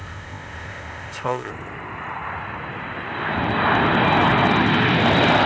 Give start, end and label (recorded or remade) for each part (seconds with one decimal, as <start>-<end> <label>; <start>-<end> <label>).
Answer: 0.0-1.5 remade; 1.5-5.5 recorded